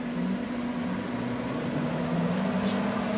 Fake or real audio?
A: real